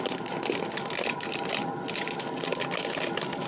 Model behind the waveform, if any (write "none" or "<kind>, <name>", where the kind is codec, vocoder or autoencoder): none